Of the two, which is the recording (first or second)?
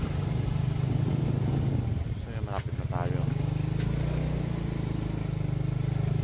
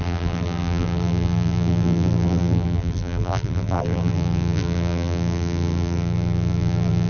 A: first